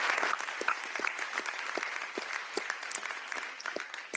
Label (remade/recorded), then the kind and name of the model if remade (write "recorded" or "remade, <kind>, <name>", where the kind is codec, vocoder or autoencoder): recorded